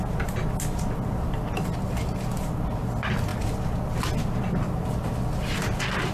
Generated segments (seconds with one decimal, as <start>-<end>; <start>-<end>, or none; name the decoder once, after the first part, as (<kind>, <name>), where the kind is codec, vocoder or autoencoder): none